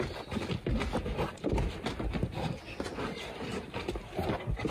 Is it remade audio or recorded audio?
recorded